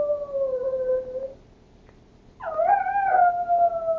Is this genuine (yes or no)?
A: yes